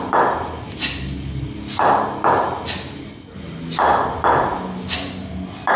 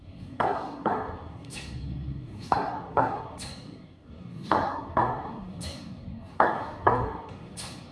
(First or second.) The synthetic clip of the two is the second